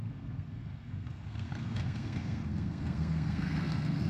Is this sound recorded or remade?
remade